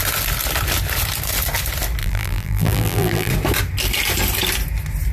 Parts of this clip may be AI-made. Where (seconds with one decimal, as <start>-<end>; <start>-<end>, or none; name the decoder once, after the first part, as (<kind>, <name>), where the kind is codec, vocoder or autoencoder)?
2.0-3.3 (vocoder, BigVGAN v2)